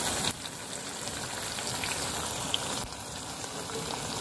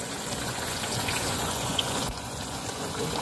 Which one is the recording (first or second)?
first